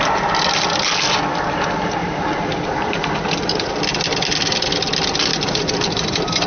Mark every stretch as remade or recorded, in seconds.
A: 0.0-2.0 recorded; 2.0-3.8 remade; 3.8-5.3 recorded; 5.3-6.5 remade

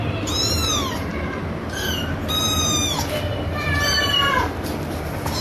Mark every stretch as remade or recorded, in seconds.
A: 0.0-5.4 remade